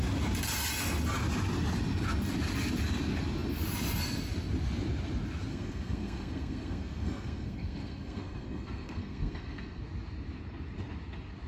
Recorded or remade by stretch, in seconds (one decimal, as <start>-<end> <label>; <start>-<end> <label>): 0.0-5.5 recorded; 5.5-9.8 remade; 9.8-11.5 recorded